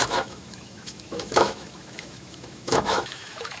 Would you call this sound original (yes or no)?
no